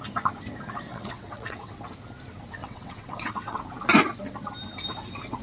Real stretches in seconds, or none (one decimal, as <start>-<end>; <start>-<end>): 0.0-0.9; 1.7-2.6; 3.6-5.4